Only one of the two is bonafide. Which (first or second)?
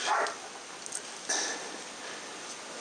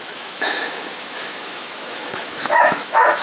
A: first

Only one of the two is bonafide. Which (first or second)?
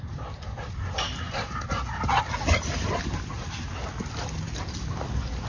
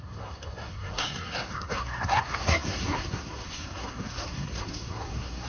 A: first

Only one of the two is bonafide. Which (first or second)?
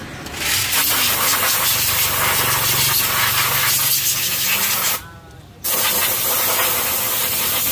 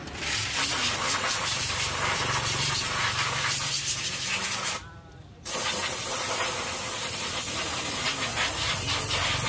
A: first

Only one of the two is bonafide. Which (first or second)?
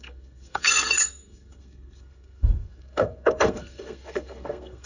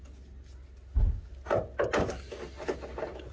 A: second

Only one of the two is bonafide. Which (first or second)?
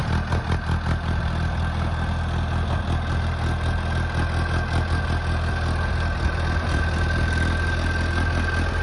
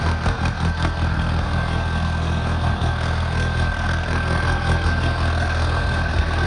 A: first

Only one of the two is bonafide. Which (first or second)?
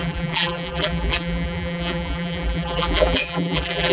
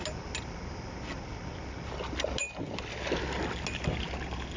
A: second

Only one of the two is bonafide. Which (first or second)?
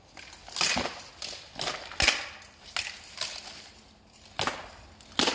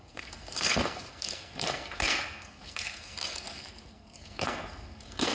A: first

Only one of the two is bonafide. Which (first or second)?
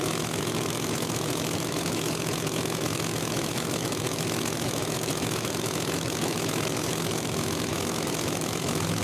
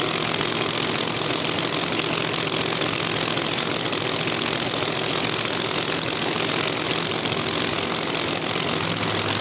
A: second